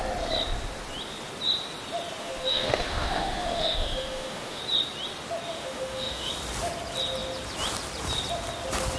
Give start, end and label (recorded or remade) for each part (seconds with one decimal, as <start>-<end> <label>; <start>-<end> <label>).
0.0-2.2 recorded; 2.2-4.6 remade; 4.6-5.5 recorded; 5.5-6.3 remade; 6.3-9.0 recorded